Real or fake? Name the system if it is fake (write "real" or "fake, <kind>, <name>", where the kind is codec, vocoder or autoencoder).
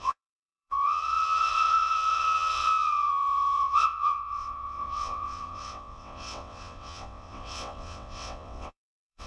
fake, vocoder, WaveNeXt